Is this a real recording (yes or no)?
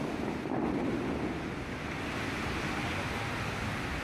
yes